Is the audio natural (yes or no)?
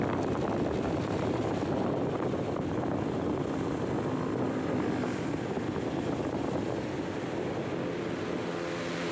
yes